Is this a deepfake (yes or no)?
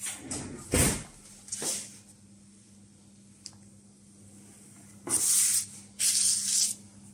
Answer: no